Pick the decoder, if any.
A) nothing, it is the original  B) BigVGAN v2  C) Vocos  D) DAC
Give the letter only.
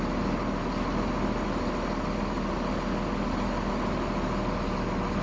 A